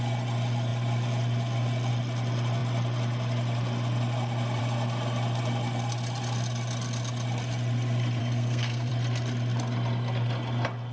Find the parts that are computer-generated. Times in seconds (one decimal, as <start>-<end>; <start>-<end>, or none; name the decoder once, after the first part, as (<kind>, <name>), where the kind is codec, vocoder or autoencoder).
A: 8.2-8.9 (codec, SNAC)

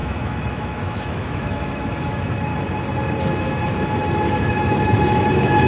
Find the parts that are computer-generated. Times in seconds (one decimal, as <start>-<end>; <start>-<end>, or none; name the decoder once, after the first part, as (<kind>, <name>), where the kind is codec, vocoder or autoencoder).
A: 0.0-2.5 (autoencoder, DAC-VAE); 3.2-5.7